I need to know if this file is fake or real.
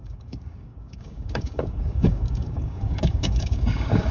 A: fake